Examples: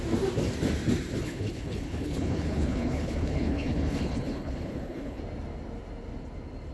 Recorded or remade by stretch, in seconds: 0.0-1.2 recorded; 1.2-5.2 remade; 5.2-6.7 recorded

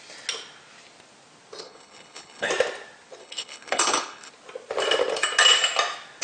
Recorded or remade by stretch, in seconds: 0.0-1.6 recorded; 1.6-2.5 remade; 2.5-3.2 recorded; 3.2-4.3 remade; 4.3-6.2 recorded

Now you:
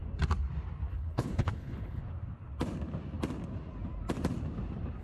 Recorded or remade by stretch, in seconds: 0.0-0.9 recorded; 0.9-2.0 remade; 2.0-5.0 recorded

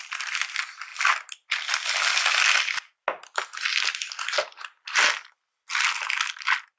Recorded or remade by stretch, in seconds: 0.0-6.8 recorded

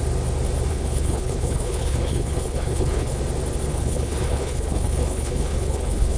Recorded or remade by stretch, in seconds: 0.0-0.7 recorded; 0.7-3.2 remade; 3.2-3.7 recorded; 3.7-6.2 remade

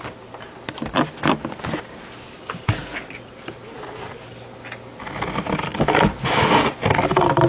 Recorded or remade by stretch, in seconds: 0.0-7.5 recorded

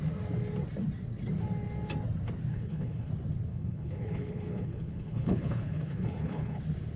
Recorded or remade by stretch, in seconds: 0.0-2.5 recorded; 2.5-3.1 remade; 3.1-3.5 recorded; 3.5-6.6 remade; 6.6-7.0 recorded